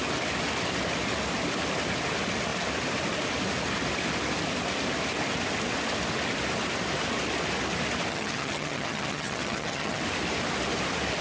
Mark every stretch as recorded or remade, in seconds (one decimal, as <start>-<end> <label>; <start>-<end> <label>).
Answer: 0.0-8.1 recorded; 8.1-10.0 remade; 10.0-11.2 recorded